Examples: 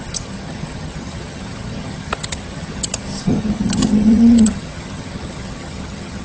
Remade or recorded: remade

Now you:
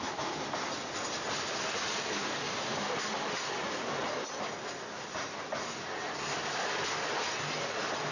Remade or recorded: recorded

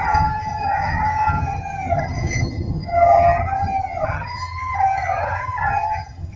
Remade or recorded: remade